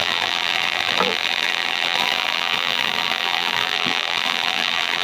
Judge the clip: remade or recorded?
remade